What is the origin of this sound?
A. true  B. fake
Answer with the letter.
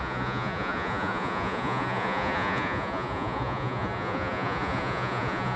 B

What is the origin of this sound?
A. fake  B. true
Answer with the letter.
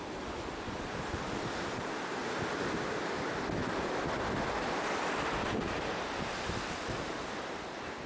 B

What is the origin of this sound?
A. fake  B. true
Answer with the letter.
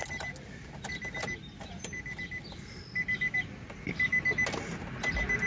B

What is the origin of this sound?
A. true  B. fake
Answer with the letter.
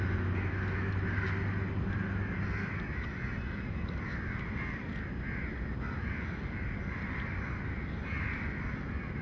A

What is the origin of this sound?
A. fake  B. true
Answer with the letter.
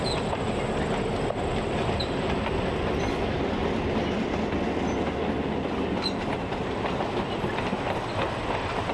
B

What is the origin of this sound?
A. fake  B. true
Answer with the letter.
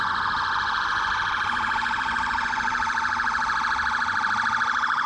A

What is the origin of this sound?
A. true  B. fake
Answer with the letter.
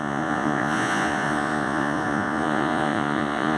B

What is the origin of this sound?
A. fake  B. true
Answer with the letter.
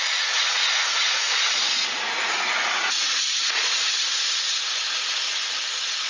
A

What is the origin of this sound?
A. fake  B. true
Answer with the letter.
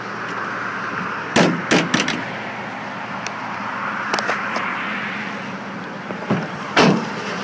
B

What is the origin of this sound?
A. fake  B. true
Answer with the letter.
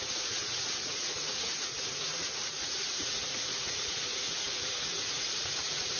A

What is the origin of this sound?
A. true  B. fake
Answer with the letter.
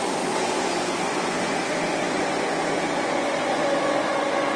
B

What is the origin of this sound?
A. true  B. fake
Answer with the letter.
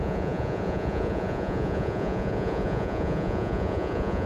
B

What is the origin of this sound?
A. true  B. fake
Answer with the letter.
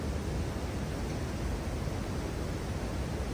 A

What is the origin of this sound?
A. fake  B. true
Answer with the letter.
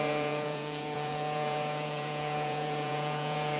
A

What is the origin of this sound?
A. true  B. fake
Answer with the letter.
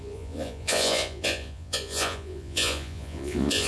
B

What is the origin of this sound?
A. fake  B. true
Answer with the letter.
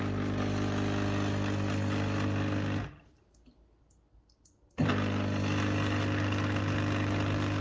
B